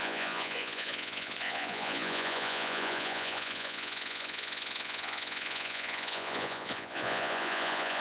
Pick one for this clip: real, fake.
fake